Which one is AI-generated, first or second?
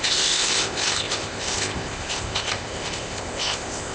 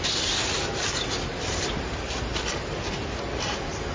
first